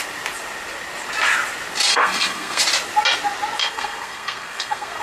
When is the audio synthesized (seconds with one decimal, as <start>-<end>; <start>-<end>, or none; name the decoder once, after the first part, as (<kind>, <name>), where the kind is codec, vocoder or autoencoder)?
1.9-2.6 (codec, SNAC); 3.6-5.0